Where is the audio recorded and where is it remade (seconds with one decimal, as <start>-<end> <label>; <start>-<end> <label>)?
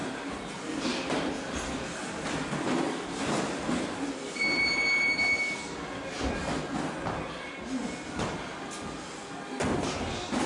0.0-10.5 recorded